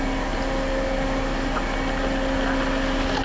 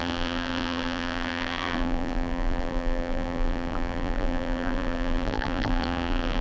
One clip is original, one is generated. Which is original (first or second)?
first